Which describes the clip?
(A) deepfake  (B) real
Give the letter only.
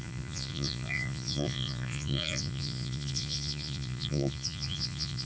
A